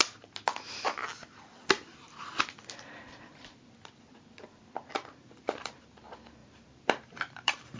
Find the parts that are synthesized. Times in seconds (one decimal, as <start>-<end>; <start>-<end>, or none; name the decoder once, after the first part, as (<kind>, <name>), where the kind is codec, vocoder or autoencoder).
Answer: 5.4-6.0 (vocoder, BigVGAN v2); 6.4-7.8